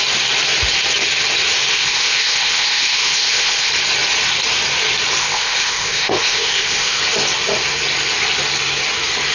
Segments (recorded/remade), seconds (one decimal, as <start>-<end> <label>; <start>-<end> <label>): 0.0-1.7 recorded; 1.7-3.7 remade; 3.7-5.2 recorded; 5.2-7.0 remade; 7.0-9.3 recorded

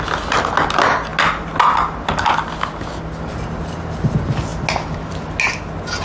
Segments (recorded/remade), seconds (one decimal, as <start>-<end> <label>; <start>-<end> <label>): 0.0-6.0 recorded